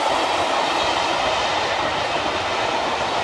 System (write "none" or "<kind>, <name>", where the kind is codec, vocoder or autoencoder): none